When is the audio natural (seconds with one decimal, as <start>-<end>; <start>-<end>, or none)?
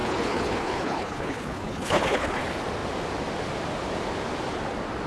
2.4-5.1